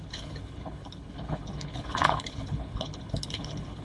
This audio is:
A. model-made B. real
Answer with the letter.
A